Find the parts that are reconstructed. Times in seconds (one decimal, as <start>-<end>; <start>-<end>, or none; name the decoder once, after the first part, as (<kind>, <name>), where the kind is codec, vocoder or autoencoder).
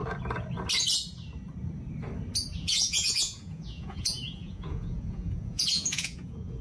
2.6-6.6 (vocoder, Vocos)